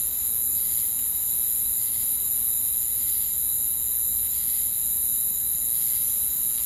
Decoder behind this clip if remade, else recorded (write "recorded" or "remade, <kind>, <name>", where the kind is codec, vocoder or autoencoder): recorded